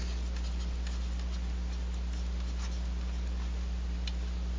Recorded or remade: recorded